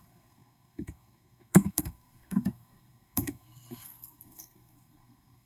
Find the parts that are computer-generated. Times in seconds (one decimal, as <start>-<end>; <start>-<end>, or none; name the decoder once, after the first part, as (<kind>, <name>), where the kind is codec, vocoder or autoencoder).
0.0-5.5 (codec, SNAC)